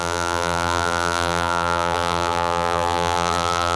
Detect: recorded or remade remade